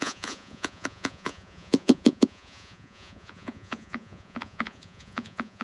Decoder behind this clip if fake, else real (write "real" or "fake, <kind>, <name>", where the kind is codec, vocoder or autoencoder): fake, vocoder, Vocos